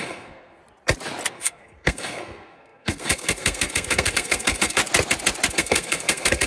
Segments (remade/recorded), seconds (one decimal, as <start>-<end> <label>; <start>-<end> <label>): 0.0-0.6 remade; 0.6-1.3 recorded; 1.3-4.8 remade; 4.8-5.5 recorded; 5.5-6.5 remade